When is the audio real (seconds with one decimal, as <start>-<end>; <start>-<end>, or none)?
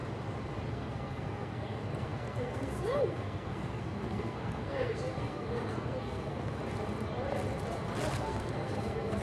0.0-0.7; 6.6-8.1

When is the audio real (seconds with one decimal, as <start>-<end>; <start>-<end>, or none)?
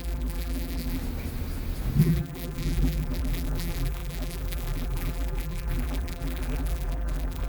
1.0-2.0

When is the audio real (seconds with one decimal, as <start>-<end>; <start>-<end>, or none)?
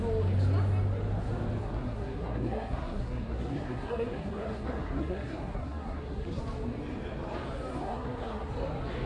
0.0-1.6; 6.4-7.7; 8.5-9.1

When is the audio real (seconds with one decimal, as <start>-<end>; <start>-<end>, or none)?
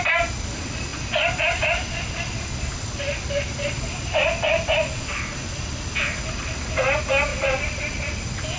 0.0-7.3